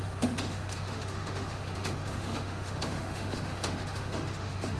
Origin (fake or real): fake